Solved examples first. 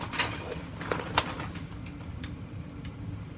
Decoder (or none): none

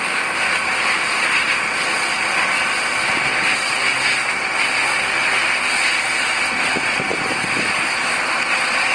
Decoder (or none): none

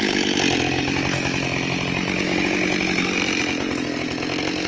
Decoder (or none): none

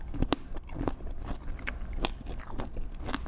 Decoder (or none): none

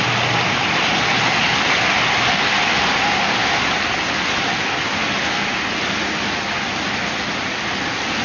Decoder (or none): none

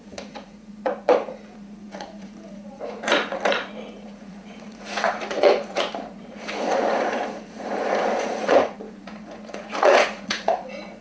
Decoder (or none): vocoder, Vocos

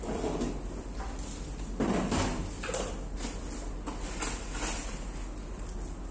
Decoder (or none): none